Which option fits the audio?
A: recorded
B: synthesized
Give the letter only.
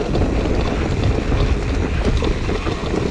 A